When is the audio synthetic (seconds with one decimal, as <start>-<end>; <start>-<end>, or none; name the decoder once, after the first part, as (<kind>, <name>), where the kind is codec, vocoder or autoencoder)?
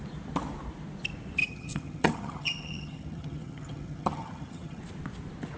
1.4-4.8 (vocoder, HiFi-GAN)